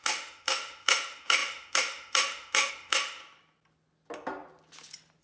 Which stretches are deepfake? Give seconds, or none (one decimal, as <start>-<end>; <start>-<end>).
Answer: 0.0-3.2

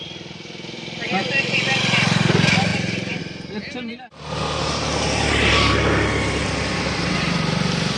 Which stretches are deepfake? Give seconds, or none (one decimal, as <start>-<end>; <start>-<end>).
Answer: 2.7-3.2

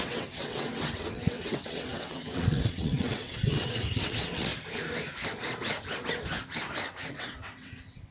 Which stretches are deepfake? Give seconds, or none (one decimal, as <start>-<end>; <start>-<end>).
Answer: 0.0-4.5; 7.1-8.1

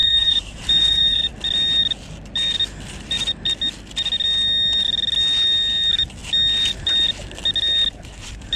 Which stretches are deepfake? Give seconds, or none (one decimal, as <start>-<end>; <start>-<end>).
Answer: 0.0-1.3

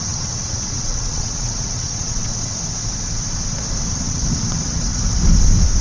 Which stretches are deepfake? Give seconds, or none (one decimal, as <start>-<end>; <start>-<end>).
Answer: 0.0-2.3; 3.9-4.9

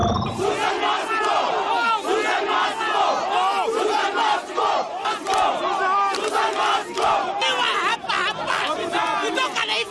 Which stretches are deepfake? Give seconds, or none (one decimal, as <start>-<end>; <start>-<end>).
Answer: none